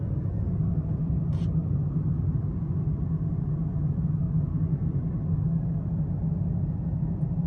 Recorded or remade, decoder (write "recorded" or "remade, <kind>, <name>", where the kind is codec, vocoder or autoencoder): recorded